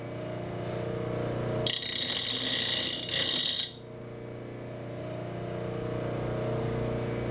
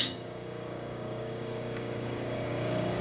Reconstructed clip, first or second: second